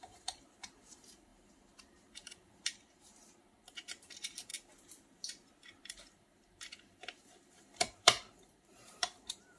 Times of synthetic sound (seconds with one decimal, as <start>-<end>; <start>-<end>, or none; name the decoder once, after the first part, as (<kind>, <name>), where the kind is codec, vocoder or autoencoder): 0.0-4.5 (vocoder, BigVGAN v2); 5.8-9.6